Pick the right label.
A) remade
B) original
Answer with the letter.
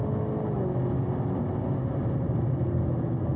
B